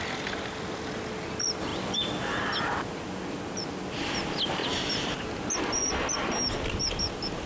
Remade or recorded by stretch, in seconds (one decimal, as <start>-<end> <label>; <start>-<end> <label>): 0.0-4.6 recorded; 4.6-5.1 remade; 5.1-7.5 recorded